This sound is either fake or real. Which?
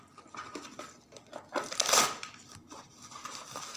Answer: real